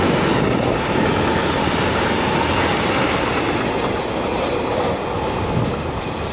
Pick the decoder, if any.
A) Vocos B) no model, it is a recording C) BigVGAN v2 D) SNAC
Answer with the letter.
B